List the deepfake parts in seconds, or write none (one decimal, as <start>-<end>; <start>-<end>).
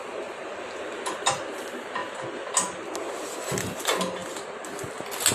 none